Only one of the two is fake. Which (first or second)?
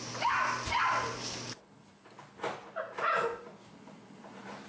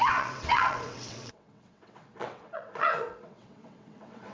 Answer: second